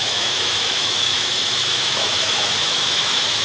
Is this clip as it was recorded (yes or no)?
no